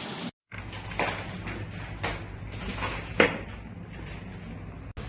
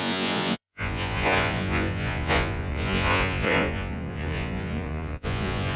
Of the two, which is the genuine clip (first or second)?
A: first